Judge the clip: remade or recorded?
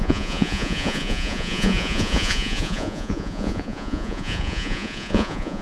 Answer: remade